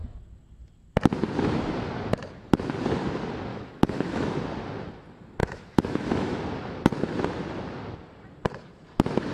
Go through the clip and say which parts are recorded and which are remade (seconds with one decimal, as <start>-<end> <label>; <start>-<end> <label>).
0.0-3.5 recorded; 3.5-4.4 remade; 4.4-5.4 recorded; 5.4-6.4 remade; 6.4-9.3 recorded